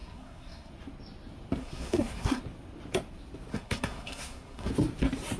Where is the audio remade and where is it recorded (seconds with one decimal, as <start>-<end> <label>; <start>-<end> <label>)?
0.0-0.7 remade; 0.7-1.6 recorded; 1.6-2.4 remade; 2.4-3.5 recorded; 3.5-4.7 remade; 4.7-5.4 recorded